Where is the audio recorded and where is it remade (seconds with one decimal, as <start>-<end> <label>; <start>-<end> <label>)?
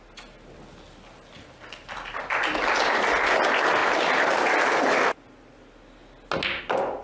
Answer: 0.0-7.0 recorded